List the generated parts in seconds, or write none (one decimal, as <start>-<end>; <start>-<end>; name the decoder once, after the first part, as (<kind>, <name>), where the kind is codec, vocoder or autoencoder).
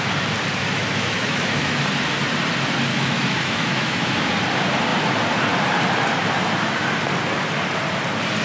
0.6-1.8 (autoencoder, DAC-VAE); 2.9-4.3